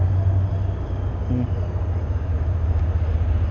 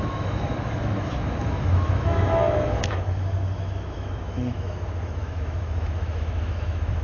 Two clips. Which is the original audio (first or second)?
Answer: first